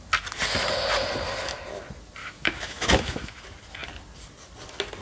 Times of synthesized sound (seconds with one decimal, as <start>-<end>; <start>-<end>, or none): 2.2-3.4

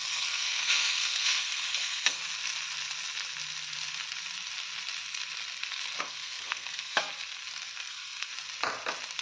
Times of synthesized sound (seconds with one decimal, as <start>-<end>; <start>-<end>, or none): 0.0-2.2; 6.0-7.1; 7.9-8.3

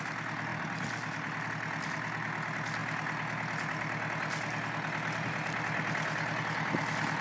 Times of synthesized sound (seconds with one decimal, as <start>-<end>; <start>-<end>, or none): none

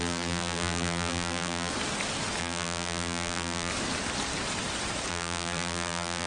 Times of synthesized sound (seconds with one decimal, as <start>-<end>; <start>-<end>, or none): 0.0-1.7; 2.4-3.7; 5.1-6.3

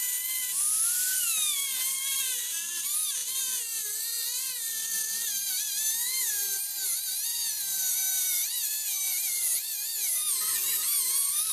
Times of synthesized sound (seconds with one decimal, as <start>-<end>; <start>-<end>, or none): 0.0-11.5

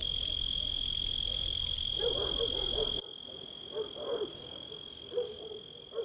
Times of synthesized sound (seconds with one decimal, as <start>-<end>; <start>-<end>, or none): 4.3-5.4

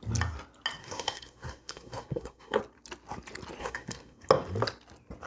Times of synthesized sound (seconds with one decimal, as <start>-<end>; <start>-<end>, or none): 0.8-2.6; 3.6-4.3